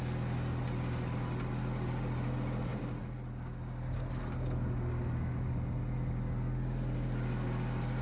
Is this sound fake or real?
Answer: real